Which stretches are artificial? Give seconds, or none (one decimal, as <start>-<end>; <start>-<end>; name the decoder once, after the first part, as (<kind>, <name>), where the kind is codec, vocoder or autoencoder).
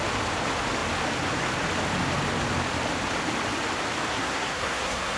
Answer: 4.1-5.2 (codec, SNAC)